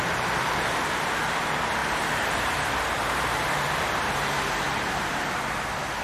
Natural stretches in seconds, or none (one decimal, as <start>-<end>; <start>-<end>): none